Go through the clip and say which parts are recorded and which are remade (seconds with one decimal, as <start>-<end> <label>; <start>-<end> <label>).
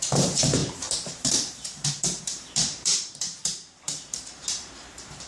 0.0-5.3 remade